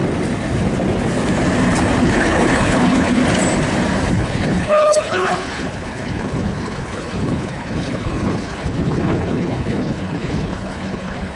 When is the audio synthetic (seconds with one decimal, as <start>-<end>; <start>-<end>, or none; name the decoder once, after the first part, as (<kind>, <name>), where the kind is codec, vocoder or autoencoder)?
2.0-3.2 (codec, HILCodec); 4.1-11.4